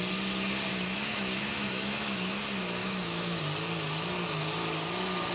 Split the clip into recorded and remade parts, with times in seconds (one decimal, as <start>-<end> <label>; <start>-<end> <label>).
0.0-0.7 recorded; 0.7-2.4 remade; 2.4-2.8 recorded; 2.8-3.4 remade; 3.4-5.3 recorded